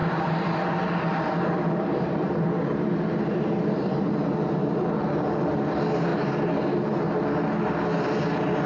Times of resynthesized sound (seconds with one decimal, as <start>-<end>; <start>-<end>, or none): 0.0-5.2; 6.1-7.2